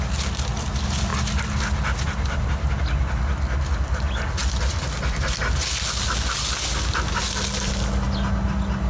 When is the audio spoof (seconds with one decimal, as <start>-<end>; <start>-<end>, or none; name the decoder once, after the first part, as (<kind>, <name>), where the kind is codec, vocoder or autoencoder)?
none